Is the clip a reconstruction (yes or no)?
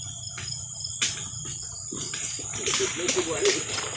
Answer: no